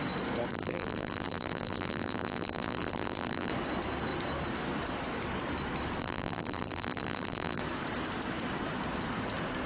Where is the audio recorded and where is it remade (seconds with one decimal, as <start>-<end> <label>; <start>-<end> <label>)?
0.0-0.5 recorded; 0.5-3.5 remade; 3.5-6.0 recorded; 6.0-7.6 remade; 7.6-9.7 recorded